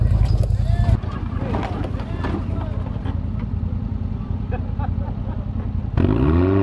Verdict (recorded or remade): recorded